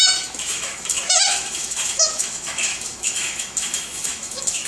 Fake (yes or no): yes